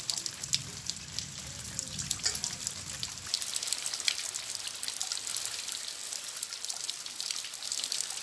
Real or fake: real